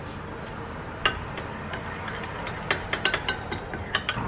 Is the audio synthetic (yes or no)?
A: no